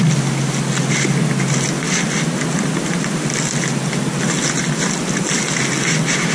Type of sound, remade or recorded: recorded